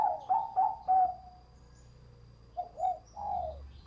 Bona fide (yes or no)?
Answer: yes